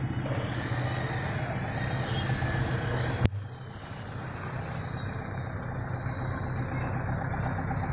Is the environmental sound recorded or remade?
recorded